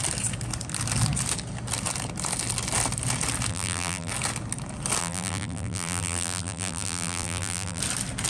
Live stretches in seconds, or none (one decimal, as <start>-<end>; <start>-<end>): 0.0-3.5; 4.1-5.0; 7.8-8.3